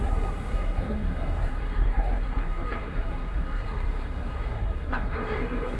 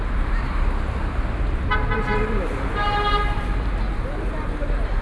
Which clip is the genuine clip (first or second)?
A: second